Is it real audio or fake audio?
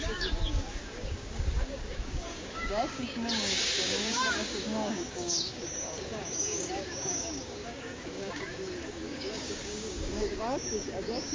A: fake